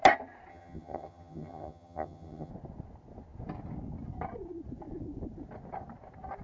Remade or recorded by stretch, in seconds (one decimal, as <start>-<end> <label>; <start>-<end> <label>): 0.0-0.5 recorded; 0.5-2.5 remade; 2.5-6.4 recorded